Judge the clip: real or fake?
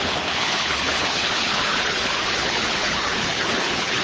fake